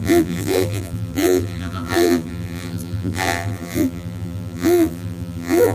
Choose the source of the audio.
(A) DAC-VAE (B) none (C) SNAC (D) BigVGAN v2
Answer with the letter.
D